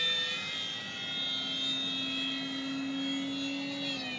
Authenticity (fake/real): real